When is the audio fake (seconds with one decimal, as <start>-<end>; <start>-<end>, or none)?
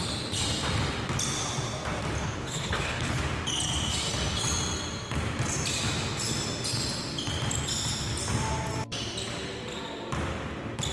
2.2-3.2